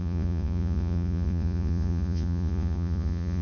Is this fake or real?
fake